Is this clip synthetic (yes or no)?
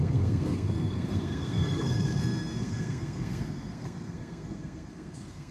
yes